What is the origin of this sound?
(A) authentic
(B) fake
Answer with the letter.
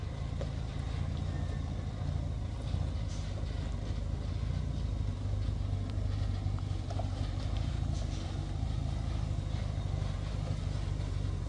A